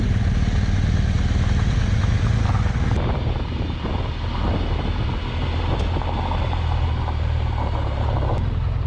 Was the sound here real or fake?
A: real